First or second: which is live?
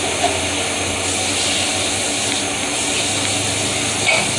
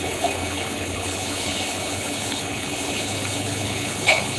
first